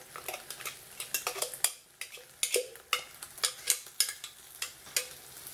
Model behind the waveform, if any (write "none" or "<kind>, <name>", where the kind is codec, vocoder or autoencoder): none